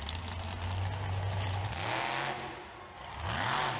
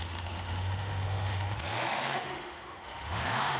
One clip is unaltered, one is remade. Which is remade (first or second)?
second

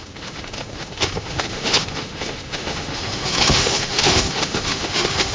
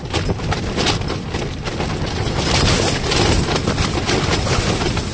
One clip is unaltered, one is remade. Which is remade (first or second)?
first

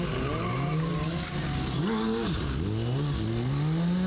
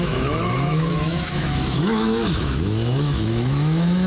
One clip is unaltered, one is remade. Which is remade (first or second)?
second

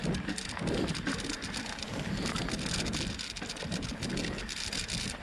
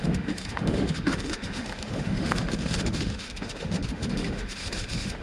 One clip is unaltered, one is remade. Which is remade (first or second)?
second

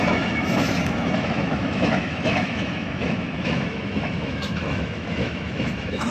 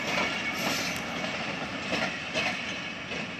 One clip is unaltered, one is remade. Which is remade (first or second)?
first